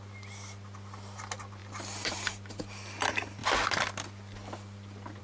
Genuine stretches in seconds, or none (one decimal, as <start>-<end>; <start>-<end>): 0.0-1.6; 2.3-5.2